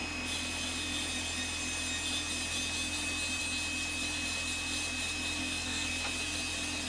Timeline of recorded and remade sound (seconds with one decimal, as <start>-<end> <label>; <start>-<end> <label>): 0.0-5.4 recorded; 5.4-5.9 remade; 5.9-6.9 recorded